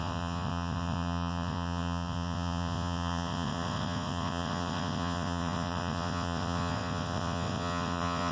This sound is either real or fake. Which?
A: fake